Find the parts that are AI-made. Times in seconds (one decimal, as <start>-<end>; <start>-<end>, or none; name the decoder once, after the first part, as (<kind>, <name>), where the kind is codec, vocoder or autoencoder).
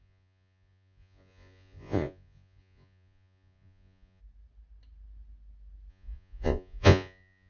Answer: 0.0-4.2 (vocoder, Vocos); 5.9-7.5